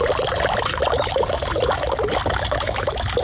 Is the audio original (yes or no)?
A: yes